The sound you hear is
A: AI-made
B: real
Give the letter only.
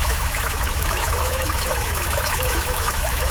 A